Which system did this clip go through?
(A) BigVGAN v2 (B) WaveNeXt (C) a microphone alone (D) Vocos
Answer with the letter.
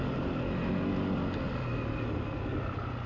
C